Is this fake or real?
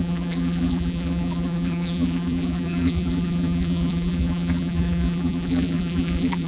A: fake